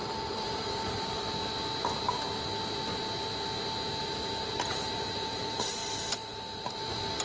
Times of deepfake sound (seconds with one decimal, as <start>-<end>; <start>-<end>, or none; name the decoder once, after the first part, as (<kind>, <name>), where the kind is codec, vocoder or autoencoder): 0.0-1.2 (vocoder, BigVGAN v2); 4.0-5.8